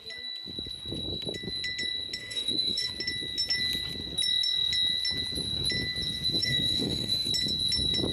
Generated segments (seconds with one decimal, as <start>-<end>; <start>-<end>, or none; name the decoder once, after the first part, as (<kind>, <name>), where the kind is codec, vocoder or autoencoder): 2.2-2.9 (autoencoder, DAC-VAE); 6.4-7.3